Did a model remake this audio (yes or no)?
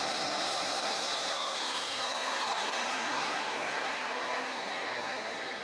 yes